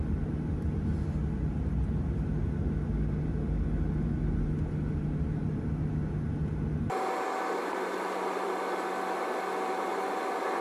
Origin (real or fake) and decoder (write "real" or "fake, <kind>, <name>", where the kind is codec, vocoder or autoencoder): real